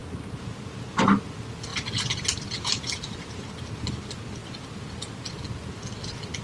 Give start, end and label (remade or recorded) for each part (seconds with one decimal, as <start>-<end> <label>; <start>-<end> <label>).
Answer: 0.0-1.7 recorded; 1.7-3.5 remade; 3.5-4.4 recorded; 4.4-5.2 remade; 5.2-6.4 recorded